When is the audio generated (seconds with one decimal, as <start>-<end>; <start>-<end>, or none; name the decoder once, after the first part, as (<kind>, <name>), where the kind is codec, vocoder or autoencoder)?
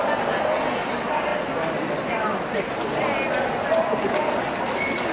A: none